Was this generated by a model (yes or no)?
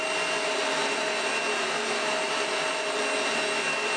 no